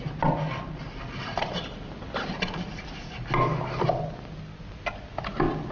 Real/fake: real